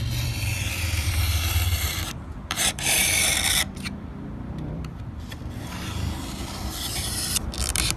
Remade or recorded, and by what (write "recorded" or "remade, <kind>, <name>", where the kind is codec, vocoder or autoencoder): remade, vocoder, BigVGAN v2